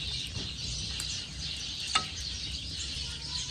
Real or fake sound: fake